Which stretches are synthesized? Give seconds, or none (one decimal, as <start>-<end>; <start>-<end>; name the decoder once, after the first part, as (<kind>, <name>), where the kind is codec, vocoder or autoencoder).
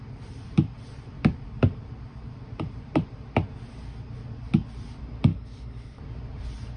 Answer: 5.3-6.0 (codec, DAC)